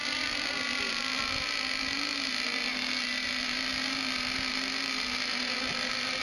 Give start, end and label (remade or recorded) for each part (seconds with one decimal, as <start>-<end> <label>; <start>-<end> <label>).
0.0-6.2 recorded